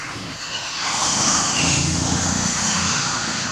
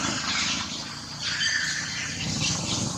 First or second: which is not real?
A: first